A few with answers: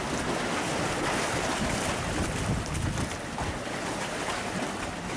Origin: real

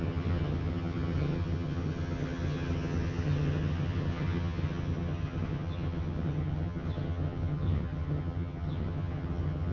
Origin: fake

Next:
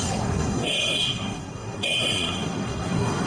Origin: fake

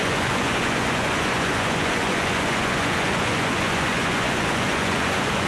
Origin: fake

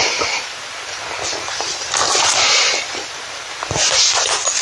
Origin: real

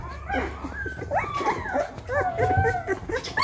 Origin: real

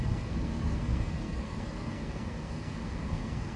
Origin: fake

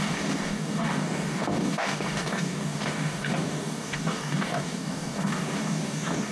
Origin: fake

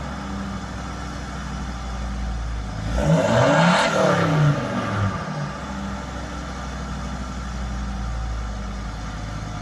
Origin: real